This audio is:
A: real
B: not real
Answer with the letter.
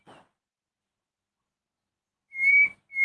A